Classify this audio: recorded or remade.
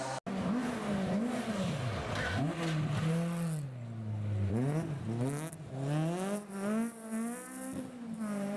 recorded